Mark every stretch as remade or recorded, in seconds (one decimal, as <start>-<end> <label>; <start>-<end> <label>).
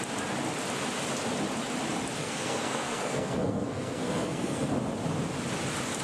0.0-2.2 recorded; 2.2-4.7 remade; 4.7-6.0 recorded